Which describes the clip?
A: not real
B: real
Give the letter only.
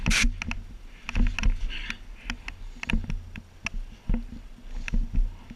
B